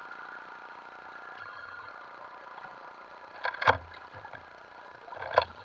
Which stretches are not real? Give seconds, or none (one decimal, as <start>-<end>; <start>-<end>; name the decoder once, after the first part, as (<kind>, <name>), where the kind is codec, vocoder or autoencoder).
1.4-1.9 (vocoder, HiFi-GAN)